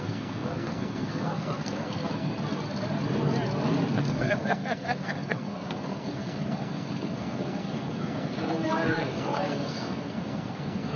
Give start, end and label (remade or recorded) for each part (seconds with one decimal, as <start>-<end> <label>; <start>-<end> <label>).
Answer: 0.0-2.3 remade; 2.3-3.9 recorded; 3.9-11.0 remade